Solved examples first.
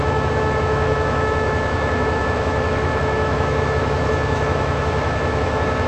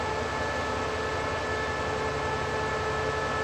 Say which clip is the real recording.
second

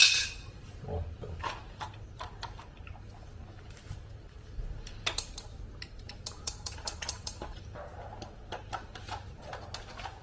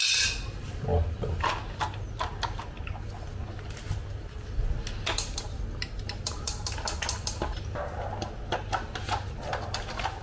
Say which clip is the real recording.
second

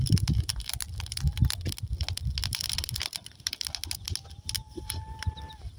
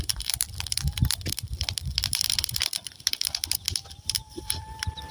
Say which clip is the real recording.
first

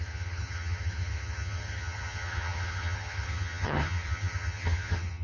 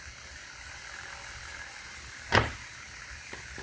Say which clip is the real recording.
second